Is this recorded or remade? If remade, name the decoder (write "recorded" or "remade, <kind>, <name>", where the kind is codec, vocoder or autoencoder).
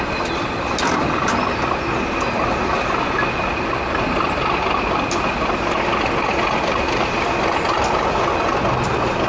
recorded